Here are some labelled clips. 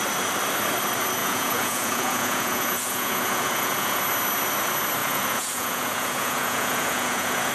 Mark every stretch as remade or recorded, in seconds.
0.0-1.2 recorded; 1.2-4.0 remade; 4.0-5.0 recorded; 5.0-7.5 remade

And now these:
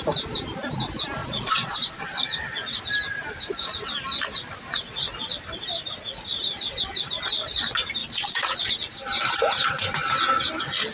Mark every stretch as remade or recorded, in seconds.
0.0-1.2 recorded; 1.2-2.0 remade; 2.0-8.0 recorded; 8.0-8.7 remade; 8.7-10.9 recorded